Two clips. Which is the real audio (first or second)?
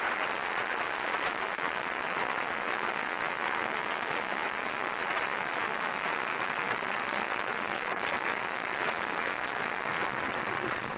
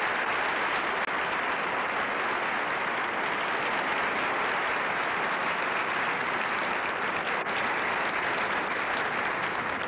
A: second